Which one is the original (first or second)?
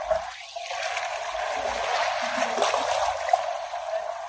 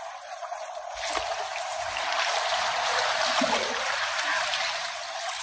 first